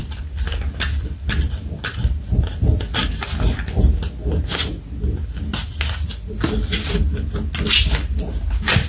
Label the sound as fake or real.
real